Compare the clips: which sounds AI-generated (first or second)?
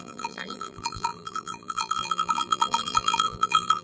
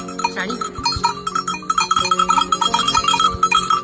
first